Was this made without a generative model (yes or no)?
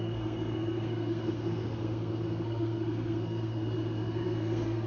no